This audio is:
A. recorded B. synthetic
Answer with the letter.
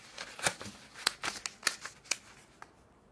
A